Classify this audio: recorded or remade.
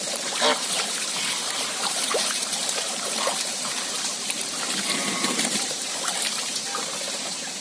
remade